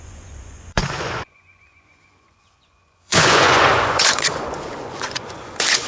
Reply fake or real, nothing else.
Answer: fake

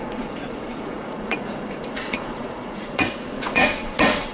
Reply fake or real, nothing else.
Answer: fake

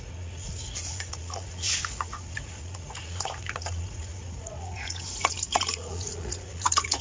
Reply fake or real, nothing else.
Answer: fake